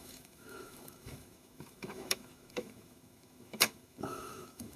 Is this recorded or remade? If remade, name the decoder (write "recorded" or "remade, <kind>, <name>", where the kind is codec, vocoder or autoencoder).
remade, autoencoder, DAC-VAE